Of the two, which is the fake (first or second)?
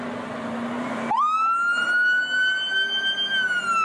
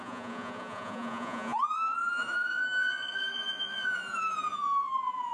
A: second